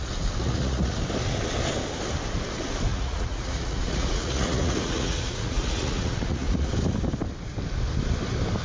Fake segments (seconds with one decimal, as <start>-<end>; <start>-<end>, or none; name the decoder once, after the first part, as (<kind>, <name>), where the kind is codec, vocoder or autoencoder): 0.4-1.0 (vocoder, Vocos); 2.9-6.7

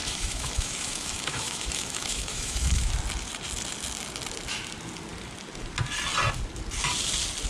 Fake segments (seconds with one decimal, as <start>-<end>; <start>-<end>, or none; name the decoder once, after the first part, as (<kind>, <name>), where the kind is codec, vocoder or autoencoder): 0.0-2.9 (autoencoder, DAC-VAE)

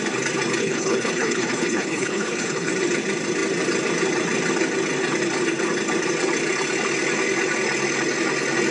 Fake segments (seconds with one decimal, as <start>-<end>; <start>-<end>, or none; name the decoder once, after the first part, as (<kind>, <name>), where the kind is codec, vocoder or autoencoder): 0.6-2.7 (codec, HILCodec)

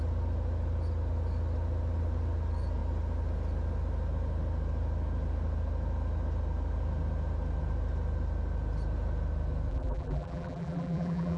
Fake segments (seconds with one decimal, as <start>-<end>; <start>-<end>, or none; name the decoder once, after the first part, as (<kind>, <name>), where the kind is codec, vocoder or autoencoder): 9.7-11.4 (vocoder, BigVGAN v2)

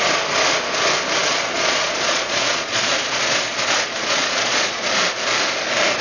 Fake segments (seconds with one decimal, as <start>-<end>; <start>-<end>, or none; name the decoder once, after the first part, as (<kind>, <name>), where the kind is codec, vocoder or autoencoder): 1.3-4.9 (vocoder, Vocos)

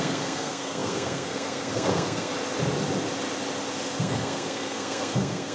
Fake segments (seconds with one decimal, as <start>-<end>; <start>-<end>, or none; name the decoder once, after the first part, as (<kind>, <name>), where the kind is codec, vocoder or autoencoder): 0.0-2.3 (codec, SNAC); 4.0-5.5